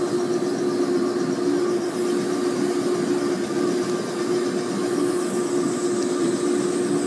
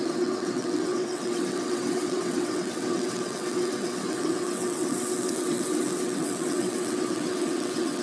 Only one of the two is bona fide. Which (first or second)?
first